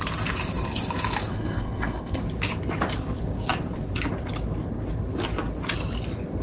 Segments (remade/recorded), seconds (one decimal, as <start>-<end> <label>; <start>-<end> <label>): 0.0-1.3 recorded; 1.3-2.2 remade; 2.2-6.4 recorded